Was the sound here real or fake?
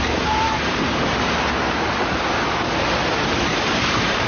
fake